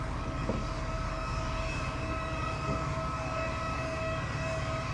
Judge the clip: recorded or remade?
remade